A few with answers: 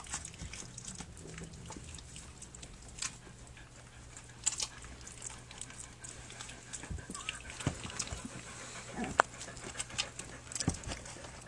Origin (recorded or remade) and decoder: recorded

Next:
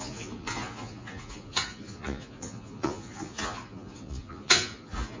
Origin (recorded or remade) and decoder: remade, vocoder, Vocos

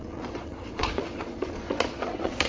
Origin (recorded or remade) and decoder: remade, vocoder, Vocos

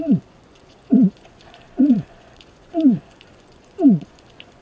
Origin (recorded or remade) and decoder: remade, vocoder, Vocos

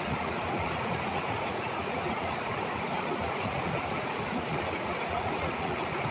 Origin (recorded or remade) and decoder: remade, vocoder, Vocos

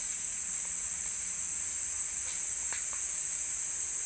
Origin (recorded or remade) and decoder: remade, vocoder, Vocos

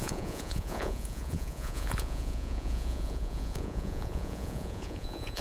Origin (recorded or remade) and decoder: remade, vocoder, Vocos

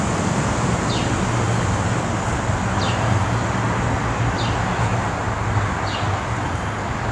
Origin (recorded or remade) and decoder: recorded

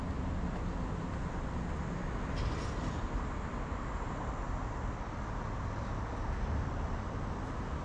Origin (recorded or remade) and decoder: recorded